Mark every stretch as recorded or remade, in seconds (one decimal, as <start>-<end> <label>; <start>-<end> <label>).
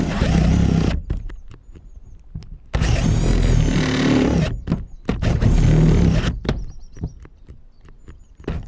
0.0-8.7 recorded